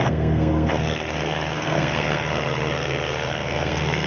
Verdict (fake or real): fake